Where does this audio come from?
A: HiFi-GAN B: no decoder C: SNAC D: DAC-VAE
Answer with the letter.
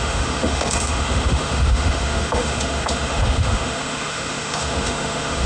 D